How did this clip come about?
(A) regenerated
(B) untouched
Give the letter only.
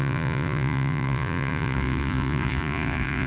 A